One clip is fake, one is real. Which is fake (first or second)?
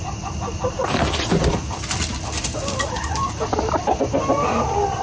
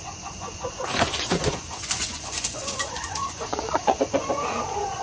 second